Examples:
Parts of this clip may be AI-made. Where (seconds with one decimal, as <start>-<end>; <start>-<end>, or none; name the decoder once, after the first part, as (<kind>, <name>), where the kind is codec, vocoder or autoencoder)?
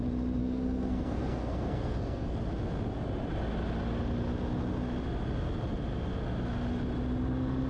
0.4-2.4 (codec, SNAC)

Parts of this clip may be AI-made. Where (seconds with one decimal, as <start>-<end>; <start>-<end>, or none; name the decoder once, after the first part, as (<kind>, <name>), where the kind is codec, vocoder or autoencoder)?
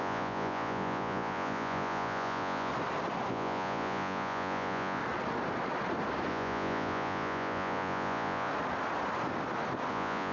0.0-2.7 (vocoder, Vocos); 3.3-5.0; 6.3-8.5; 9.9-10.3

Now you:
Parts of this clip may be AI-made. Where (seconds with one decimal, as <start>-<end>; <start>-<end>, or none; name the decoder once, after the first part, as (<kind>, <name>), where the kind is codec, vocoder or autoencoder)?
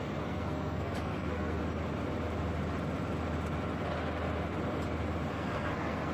0.0-1.6 (codec, SNAC); 5.3-6.1